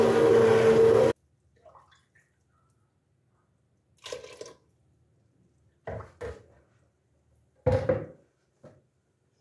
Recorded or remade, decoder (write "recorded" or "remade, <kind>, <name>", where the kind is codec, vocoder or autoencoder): recorded